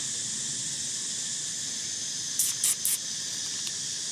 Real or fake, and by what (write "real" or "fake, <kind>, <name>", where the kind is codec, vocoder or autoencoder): real